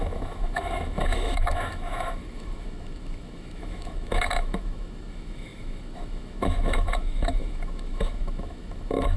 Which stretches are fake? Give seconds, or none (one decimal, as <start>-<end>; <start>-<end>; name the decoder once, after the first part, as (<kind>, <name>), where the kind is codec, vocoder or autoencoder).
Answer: 0.0-9.2 (autoencoder, DAC-VAE)